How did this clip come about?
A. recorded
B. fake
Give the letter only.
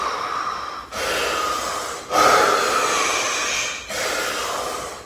A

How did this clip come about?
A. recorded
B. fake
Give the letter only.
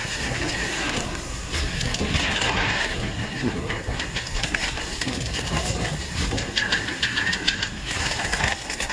B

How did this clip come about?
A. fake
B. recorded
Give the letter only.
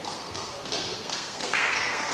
A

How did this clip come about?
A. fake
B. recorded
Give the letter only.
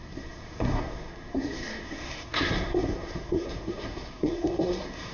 A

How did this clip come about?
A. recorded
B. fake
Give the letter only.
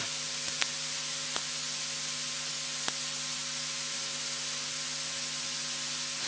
A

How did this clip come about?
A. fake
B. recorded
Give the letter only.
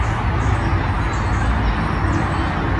B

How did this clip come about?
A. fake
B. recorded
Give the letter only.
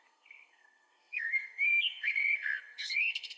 A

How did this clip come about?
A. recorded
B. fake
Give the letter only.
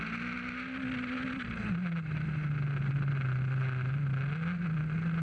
A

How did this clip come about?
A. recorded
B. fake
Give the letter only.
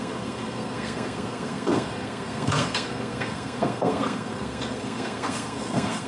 B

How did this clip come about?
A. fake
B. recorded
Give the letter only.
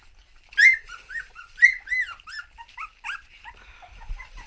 B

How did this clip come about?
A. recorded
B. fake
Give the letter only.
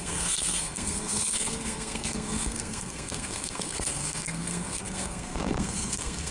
B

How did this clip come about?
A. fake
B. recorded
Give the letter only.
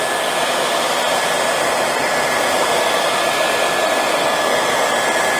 B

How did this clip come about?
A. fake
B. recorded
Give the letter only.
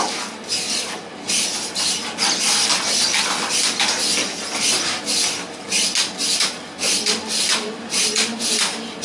B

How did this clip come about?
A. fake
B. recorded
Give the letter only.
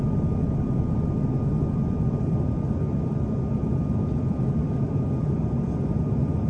B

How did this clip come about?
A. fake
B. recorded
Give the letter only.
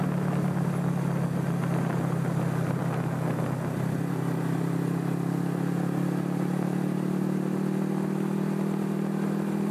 B